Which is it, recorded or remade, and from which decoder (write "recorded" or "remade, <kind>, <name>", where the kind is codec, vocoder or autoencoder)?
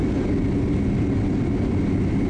recorded